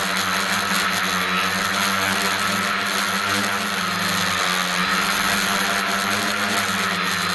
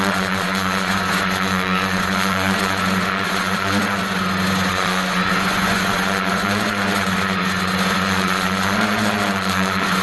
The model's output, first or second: second